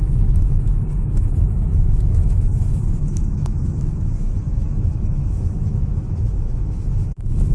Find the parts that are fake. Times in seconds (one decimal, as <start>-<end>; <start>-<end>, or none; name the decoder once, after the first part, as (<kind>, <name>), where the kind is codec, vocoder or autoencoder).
0.0-7.5 (autoencoder, DAC-VAE)